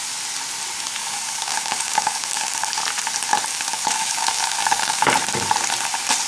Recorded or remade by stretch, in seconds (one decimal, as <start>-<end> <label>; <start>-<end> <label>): 0.0-1.0 recorded; 1.0-2.7 remade; 2.7-3.5 recorded; 3.5-5.1 remade; 5.1-6.3 recorded